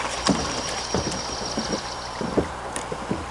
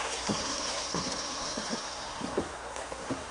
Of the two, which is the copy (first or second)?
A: second